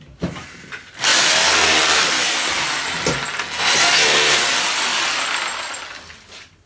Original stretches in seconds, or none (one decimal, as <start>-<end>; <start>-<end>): 0.0-6.7